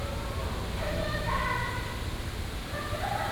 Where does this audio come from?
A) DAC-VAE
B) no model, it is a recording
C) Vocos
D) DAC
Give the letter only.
B